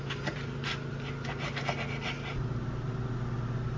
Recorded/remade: recorded